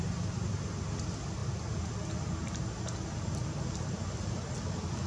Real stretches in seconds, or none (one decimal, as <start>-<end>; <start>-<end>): 0.0-5.1